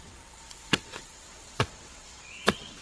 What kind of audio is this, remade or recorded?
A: remade